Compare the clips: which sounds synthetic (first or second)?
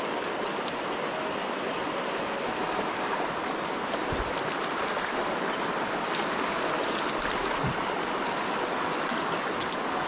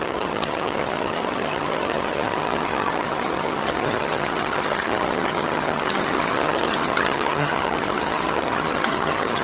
second